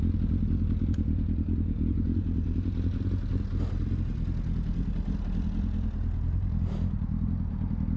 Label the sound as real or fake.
real